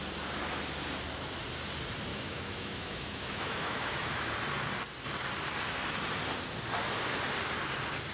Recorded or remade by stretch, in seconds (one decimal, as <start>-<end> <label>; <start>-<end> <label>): 0.0-2.1 recorded; 2.1-4.3 remade; 4.3-8.1 recorded